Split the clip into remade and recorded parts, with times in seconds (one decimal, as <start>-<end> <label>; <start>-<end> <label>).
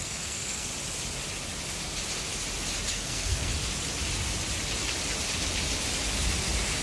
0.0-0.7 remade; 0.7-2.9 recorded; 2.9-3.5 remade; 3.5-6.8 recorded